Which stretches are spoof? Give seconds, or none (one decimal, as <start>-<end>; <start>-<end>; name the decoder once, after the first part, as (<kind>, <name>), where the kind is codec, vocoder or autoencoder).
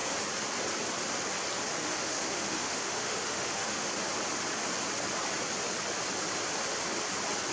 1.8-3.9 (autoencoder, DAC-VAE)